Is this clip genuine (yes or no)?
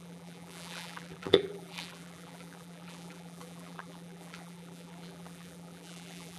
no